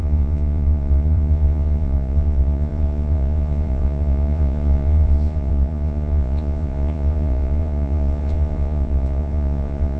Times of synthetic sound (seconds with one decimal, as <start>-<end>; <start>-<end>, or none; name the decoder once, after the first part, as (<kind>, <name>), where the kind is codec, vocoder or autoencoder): 0.0-10.0 (vocoder, Vocos)